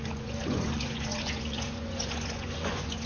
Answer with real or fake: fake